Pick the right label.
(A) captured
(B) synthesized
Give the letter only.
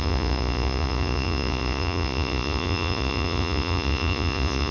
B